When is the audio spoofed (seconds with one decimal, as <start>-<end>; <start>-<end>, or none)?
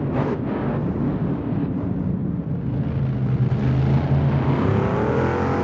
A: none